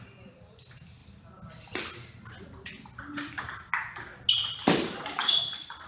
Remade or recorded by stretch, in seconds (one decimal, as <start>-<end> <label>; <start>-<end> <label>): 0.0-5.9 recorded